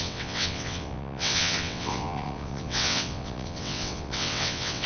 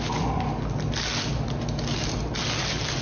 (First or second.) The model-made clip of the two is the first